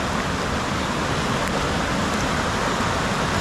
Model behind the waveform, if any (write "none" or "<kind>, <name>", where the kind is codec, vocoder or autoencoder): none